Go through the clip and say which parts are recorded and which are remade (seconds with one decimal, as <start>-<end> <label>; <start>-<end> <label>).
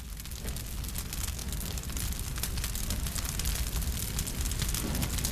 0.0-1.4 recorded; 1.4-4.6 remade; 4.6-5.3 recorded